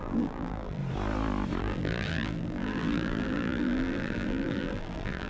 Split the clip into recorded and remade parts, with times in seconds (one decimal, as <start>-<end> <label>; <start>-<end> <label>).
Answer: 0.0-0.8 remade; 0.8-1.6 recorded; 1.6-5.3 remade